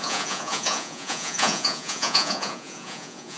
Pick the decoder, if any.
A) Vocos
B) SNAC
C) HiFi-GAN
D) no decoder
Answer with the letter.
A